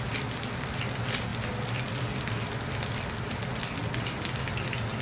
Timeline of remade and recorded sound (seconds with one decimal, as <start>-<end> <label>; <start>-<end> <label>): 0.0-5.0 recorded